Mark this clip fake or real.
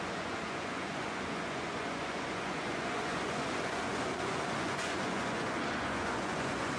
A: fake